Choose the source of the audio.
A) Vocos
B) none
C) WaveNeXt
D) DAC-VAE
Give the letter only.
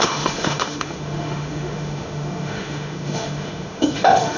D